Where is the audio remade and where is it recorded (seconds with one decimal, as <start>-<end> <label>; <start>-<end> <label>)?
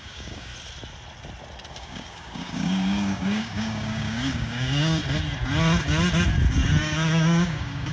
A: 0.0-0.5 remade; 0.5-1.7 recorded; 1.7-5.0 remade; 5.0-6.8 recorded; 6.8-7.9 remade